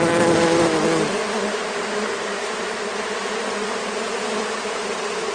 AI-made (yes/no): no